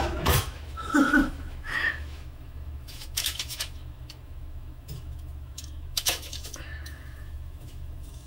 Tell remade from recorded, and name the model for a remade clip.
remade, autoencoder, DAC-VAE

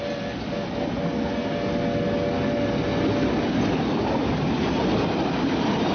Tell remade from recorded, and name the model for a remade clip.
recorded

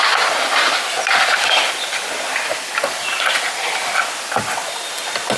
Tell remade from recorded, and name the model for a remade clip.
recorded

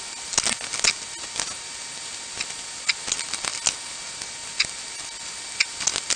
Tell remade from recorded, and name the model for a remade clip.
recorded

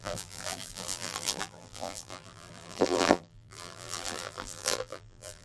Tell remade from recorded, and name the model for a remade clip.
remade, vocoder, BigVGAN v2